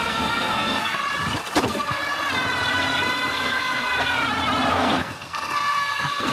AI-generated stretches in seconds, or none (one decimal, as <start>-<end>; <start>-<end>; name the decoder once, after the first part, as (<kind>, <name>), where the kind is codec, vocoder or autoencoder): 0.0-1.0 (codec, SNAC); 1.6-2.0; 2.7-4.2; 4.7-6.3